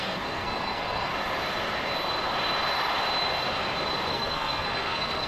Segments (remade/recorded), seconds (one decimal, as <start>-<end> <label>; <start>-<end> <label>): 0.0-1.1 remade; 1.1-4.1 recorded; 4.1-5.3 remade